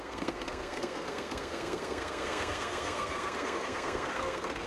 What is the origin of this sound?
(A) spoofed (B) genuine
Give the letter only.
A